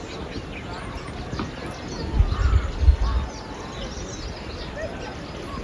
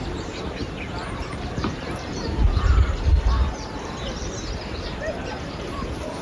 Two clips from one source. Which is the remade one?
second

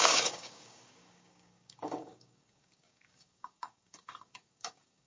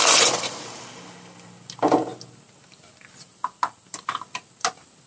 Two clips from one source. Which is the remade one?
first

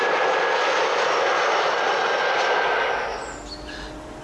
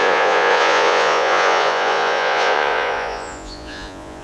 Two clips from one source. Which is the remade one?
second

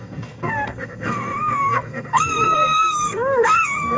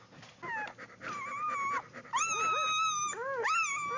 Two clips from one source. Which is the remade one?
first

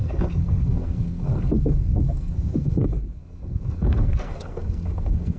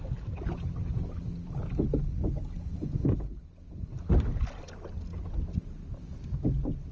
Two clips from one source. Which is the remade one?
first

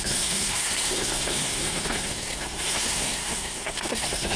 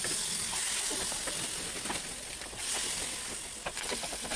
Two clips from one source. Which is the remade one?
first